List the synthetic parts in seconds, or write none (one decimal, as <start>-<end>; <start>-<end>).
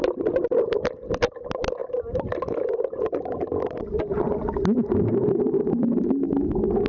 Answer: none